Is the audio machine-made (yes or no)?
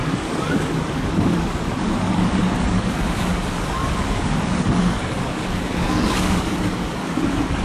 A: yes